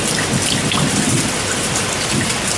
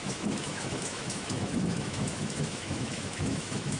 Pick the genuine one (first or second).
first